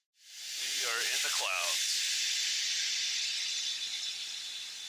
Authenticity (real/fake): real